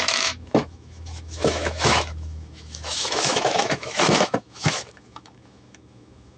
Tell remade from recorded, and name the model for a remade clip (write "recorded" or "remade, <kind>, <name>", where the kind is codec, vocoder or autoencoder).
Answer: remade, autoencoder, DAC-VAE